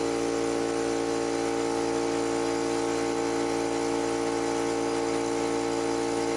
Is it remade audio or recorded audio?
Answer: recorded